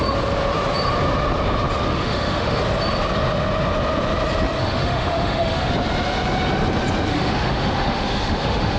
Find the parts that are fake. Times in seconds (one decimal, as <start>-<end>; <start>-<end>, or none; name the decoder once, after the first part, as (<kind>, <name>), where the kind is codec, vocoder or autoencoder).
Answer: 1.9-2.6 (autoencoder, DAC-VAE); 4.6-5.7; 7.1-8.8